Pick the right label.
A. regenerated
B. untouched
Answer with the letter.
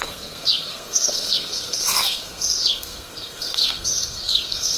A